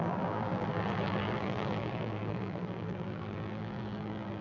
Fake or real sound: fake